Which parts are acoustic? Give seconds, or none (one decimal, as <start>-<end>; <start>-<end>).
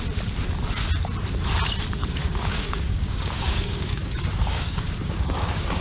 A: 0.0-2.0